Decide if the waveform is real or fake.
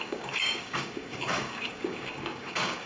fake